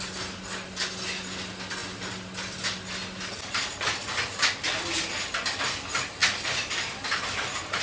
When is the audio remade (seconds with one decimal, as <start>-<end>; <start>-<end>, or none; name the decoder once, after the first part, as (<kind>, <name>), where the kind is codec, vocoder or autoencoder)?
none